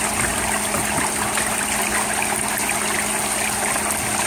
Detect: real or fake real